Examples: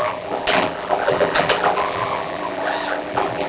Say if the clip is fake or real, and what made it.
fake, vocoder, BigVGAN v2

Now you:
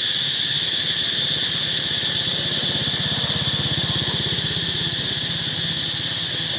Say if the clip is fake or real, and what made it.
real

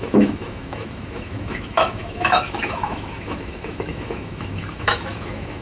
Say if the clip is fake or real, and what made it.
fake, autoencoder, DAC-VAE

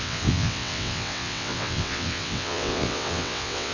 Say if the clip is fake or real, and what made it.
fake, vocoder, WaveNeXt